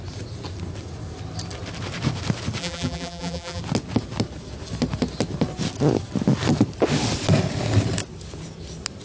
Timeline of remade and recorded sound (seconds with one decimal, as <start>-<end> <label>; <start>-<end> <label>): 0.0-2.6 recorded; 2.6-3.6 remade; 3.6-9.0 recorded

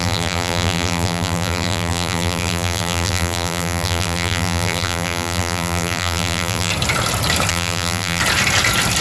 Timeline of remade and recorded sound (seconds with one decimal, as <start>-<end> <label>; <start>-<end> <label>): 0.0-6.7 remade; 6.7-7.5 recorded; 7.5-8.2 remade; 8.2-9.0 recorded

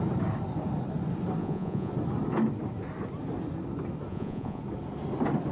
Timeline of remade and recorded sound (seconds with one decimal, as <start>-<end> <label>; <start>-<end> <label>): 0.0-1.4 recorded; 1.4-1.9 remade; 1.9-4.1 recorded; 4.1-4.6 remade; 4.6-5.5 recorded

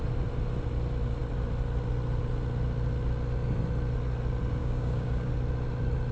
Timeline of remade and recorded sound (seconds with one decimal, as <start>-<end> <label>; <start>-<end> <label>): 0.0-4.6 recorded; 4.6-5.3 remade; 5.3-6.1 recorded

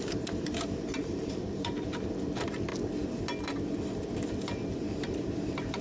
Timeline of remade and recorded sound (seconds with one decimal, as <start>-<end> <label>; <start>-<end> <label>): 0.0-2.7 remade; 2.7-4.3 recorded; 4.3-5.8 remade

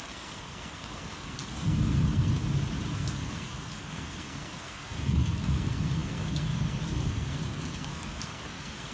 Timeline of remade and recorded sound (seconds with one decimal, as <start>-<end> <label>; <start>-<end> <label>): 0.0-2.4 remade; 2.4-2.9 recorded; 2.9-8.9 remade

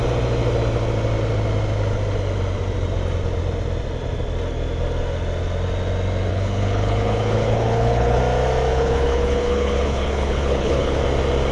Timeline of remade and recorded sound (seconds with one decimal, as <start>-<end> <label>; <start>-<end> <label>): 0.0-6.3 recorded; 6.3-8.2 remade; 8.2-8.7 recorded; 8.7-11.0 remade; 11.0-11.5 recorded